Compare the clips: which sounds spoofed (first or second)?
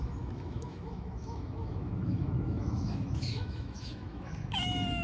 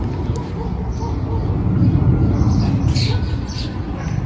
first